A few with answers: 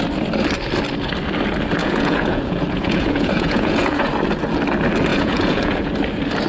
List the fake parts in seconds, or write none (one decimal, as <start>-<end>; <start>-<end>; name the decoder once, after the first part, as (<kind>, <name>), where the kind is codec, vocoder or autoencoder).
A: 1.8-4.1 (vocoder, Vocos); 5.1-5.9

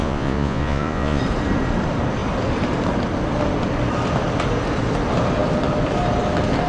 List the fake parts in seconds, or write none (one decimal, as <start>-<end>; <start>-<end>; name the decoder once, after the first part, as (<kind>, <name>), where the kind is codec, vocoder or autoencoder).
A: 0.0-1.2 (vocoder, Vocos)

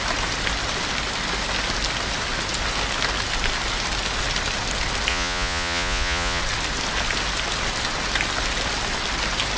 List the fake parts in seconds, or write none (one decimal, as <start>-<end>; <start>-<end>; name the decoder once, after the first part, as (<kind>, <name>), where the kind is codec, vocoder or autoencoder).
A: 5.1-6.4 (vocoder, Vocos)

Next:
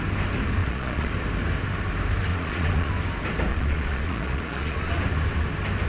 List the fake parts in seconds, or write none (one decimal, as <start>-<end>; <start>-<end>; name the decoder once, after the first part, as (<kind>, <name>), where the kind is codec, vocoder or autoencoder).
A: 0.6-1.1 (vocoder, Vocos); 2.3-2.9; 3.5-4.9

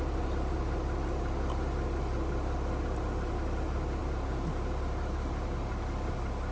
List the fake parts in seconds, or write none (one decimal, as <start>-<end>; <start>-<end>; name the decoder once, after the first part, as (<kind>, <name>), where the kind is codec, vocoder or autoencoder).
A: none

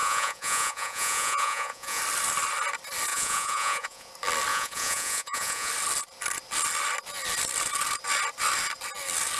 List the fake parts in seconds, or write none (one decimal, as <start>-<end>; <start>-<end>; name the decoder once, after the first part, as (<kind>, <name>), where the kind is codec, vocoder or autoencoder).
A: 0.0-2.0 (vocoder, Vocos); 3.1-4.1; 4.5-5.7

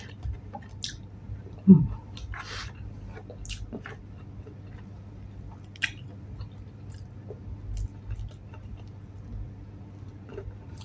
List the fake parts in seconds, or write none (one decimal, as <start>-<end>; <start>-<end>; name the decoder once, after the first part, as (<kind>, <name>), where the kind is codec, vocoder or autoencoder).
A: none

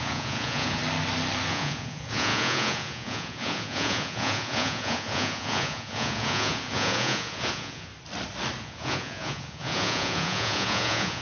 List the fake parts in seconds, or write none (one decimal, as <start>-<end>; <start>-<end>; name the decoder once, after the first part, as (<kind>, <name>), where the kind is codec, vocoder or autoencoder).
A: 0.0-0.8 (vocoder, Vocos); 1.5-7.9; 8.6-11.2